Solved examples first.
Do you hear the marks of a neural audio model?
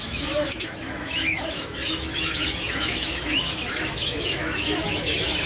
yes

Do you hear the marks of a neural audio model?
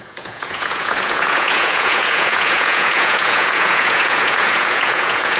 yes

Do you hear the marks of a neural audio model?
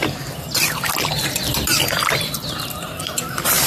no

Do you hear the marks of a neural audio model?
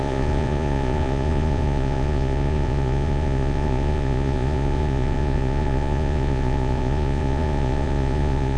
yes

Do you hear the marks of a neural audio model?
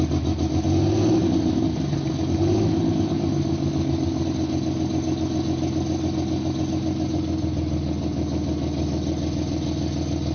no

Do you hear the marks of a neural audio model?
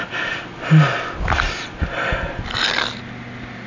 no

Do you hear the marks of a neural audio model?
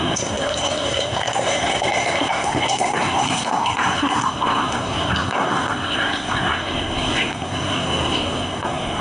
yes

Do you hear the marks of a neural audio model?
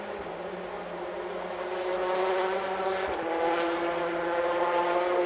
no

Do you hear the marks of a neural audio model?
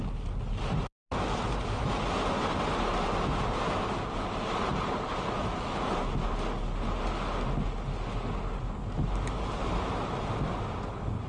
no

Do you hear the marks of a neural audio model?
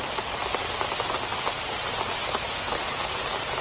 no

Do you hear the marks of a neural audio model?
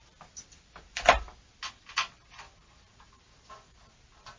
yes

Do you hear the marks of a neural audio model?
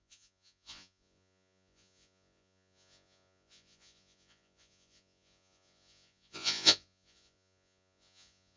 yes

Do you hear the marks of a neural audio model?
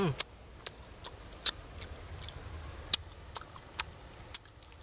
no